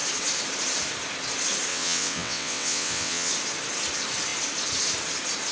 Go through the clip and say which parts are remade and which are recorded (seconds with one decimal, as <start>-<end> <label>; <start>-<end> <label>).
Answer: 0.0-1.7 recorded; 1.7-3.3 remade; 3.3-5.5 recorded